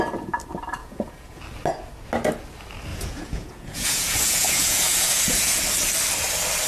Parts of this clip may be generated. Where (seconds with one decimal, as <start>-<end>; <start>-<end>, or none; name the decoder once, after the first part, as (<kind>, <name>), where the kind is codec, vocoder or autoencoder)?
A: 0.8-1.4 (vocoder, Vocos); 2.9-5.6